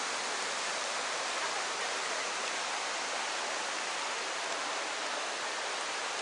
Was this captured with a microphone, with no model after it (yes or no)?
yes